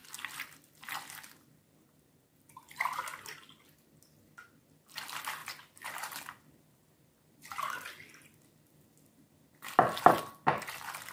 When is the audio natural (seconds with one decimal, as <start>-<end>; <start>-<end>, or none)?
0.0-11.1